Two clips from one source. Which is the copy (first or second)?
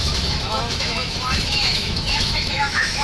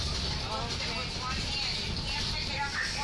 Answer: first